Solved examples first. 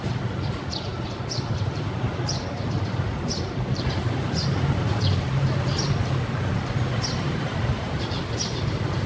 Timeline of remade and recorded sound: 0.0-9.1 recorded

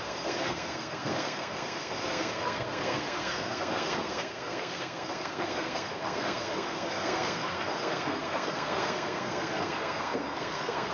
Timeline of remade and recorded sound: 0.0-10.9 remade

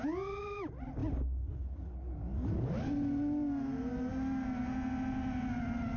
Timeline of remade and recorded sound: 0.0-6.0 recorded

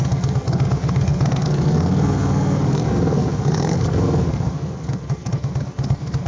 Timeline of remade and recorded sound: 0.0-6.3 remade

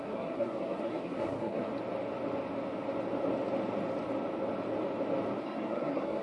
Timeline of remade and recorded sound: 0.0-1.7 remade; 1.7-5.4 recorded; 5.4-6.2 remade

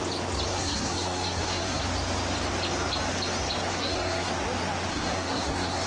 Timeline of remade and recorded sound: 0.0-0.5 recorded; 0.5-1.8 remade; 1.8-3.7 recorded; 3.7-4.3 remade; 4.3-4.9 recorded; 4.9-5.9 remade